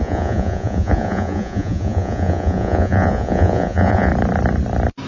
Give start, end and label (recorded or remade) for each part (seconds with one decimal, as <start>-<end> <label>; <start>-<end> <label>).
0.0-4.1 remade; 4.1-5.1 recorded